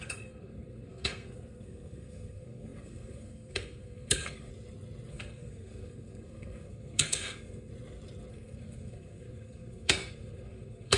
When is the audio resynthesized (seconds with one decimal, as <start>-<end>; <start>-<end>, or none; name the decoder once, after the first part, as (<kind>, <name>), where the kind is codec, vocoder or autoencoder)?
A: 0.0-4.5 (codec, SNAC); 5.1-7.7; 8.3-11.0